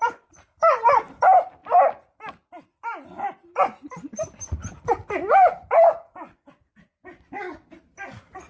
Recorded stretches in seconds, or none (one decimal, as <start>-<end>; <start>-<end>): 0.0-8.5